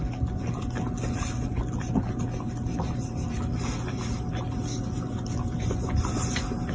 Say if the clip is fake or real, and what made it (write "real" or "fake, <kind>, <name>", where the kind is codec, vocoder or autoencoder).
real